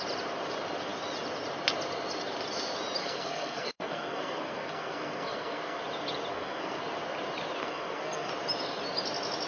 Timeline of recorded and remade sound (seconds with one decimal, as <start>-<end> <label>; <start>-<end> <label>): 0.0-3.0 recorded; 3.0-5.8 remade; 5.8-6.3 recorded; 6.3-6.8 remade; 6.8-7.6 recorded; 7.6-8.3 remade; 8.3-9.5 recorded